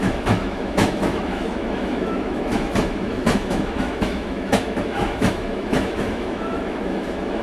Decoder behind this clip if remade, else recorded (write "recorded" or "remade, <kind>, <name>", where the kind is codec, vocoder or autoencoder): remade, autoencoder, DAC-VAE